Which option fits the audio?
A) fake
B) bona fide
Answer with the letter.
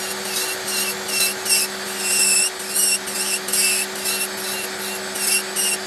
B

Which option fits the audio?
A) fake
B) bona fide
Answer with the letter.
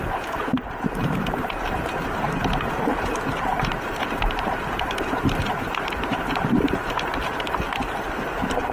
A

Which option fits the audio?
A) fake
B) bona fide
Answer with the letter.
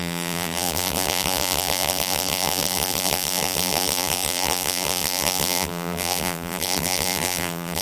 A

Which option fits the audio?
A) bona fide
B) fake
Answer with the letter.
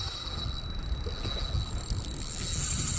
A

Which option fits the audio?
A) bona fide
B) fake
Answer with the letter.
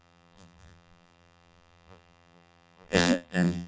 B